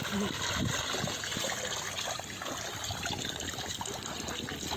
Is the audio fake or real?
real